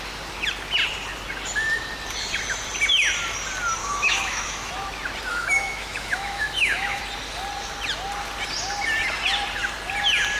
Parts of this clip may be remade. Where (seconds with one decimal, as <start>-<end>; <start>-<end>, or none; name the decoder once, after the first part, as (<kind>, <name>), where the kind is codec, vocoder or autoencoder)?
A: 3.8-4.7 (autoencoder, DAC-VAE); 5.3-7.0